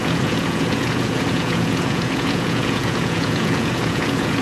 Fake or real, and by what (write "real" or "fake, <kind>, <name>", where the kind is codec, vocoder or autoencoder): fake, vocoder, Vocos